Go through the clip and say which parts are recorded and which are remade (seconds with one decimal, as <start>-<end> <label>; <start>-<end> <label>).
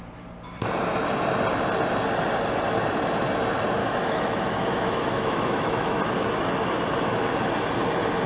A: 0.0-3.8 recorded; 3.8-6.0 remade; 6.0-8.3 recorded